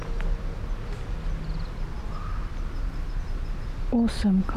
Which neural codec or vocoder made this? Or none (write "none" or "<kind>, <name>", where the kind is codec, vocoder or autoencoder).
none